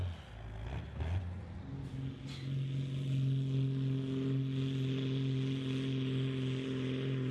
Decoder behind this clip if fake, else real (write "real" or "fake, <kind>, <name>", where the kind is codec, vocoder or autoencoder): real